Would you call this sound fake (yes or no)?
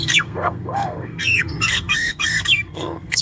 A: yes